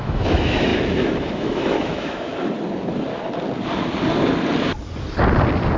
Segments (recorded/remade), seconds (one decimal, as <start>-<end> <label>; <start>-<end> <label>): 0.0-2.3 remade; 2.3-5.8 recorded

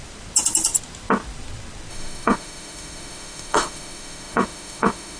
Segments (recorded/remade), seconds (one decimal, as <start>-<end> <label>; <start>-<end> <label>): 0.0-1.9 recorded; 1.9-5.2 remade

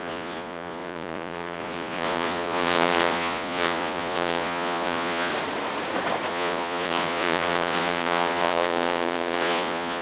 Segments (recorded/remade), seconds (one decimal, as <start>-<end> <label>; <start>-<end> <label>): 0.0-5.3 remade; 5.3-6.3 recorded; 6.3-10.0 remade

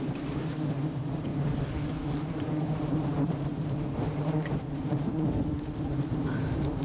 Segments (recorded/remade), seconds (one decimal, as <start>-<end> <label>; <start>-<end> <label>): 0.0-1.3 remade; 1.3-2.2 recorded; 2.2-6.8 remade

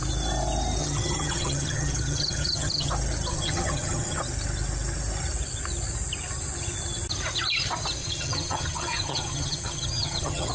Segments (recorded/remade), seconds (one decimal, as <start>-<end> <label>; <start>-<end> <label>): 0.0-0.8 recorded; 0.8-2.9 remade; 2.9-3.3 recorded; 3.3-4.2 remade; 4.2-8.0 recorded; 8.0-10.5 remade

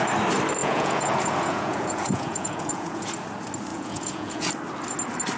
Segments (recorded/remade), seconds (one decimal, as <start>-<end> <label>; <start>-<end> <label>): 0.0-0.6 recorded; 0.6-3.1 remade; 3.1-3.7 recorded; 3.7-4.5 remade; 4.5-5.4 recorded

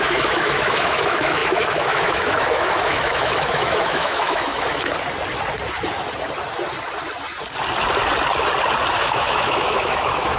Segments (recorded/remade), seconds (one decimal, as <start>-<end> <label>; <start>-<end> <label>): 0.0-4.9 remade; 4.9-8.9 recorded; 8.9-10.4 remade